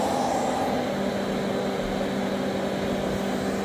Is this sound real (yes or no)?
yes